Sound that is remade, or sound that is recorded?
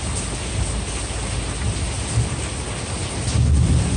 recorded